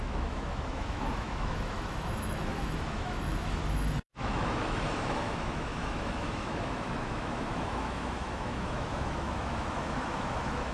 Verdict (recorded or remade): remade